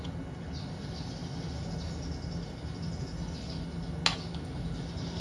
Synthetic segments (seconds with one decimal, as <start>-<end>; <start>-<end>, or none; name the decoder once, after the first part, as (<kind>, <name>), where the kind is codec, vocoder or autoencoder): none

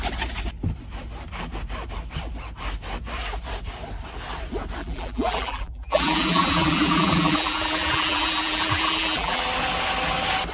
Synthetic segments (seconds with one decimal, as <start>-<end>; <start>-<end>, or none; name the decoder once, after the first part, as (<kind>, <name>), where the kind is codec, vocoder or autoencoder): 4.8-9.4 (vocoder, BigVGAN v2)

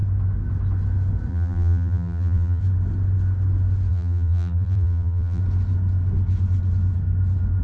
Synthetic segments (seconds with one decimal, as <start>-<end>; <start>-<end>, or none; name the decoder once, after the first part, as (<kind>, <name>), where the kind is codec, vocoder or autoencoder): 1.3-2.6 (vocoder, BigVGAN v2); 3.9-5.4

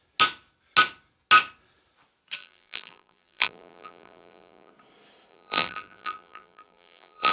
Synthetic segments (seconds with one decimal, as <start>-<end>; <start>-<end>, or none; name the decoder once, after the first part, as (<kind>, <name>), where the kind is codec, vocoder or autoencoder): 2.4-4.7 (vocoder, BigVGAN v2); 5.3-7.3